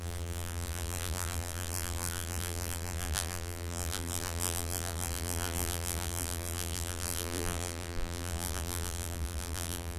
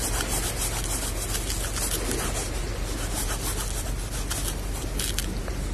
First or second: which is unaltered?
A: second